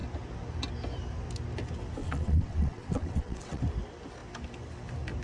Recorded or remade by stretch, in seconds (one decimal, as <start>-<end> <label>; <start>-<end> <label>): 0.0-2.0 recorded; 2.0-3.6 remade; 3.6-5.2 recorded